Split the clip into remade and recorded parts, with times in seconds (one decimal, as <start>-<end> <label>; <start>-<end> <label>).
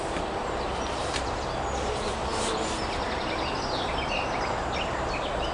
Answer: 0.0-5.5 recorded